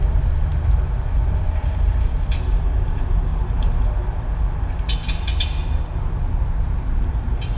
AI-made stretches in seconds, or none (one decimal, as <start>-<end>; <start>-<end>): 0.0-3.3; 7.1-7.6